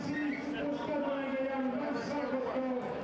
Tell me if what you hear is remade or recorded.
recorded